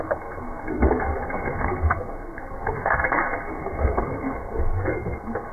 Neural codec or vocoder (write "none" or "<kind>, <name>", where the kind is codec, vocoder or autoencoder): codec, SNAC